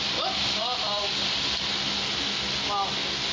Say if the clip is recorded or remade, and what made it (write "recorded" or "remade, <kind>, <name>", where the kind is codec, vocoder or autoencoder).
recorded